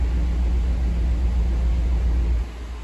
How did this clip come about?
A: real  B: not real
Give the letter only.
A